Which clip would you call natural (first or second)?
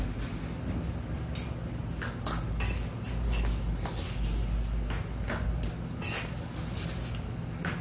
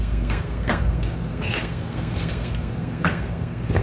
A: first